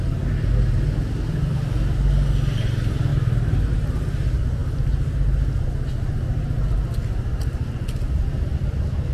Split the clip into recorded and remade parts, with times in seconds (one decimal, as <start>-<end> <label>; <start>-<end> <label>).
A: 0.0-9.1 recorded